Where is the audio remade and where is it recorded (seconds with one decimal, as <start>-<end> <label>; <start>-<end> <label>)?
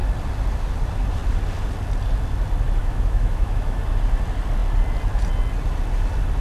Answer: 0.0-2.8 recorded; 2.8-3.8 remade; 3.8-6.4 recorded